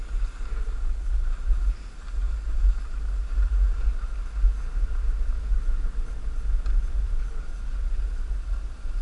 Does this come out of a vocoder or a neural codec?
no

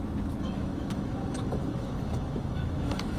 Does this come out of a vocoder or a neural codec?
yes